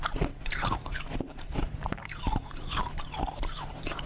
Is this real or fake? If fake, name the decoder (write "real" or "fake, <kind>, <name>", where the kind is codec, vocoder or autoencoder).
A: fake, vocoder, BigVGAN v2